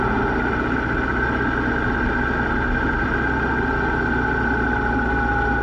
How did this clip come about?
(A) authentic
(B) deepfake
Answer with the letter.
A